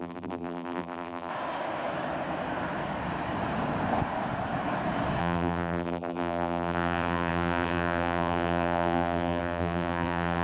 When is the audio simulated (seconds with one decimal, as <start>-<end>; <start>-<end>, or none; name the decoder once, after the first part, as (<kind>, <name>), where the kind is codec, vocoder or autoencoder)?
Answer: 0.0-1.3 (vocoder, BigVGAN v2); 5.2-10.4